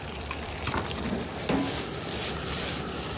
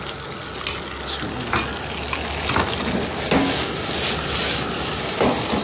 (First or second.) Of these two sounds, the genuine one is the second